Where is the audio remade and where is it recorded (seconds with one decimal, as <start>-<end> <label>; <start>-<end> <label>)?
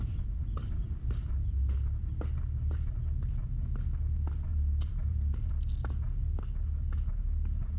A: 0.0-4.5 recorded; 4.5-5.5 remade; 5.5-7.8 recorded